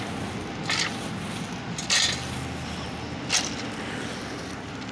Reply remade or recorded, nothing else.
recorded